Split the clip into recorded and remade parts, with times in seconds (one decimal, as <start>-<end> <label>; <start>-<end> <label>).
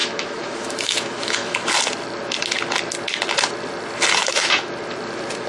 0.0-1.7 remade; 1.7-4.2 recorded; 4.2-4.7 remade; 4.7-5.5 recorded